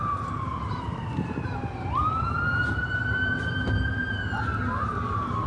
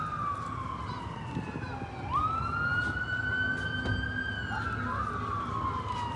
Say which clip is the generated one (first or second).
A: first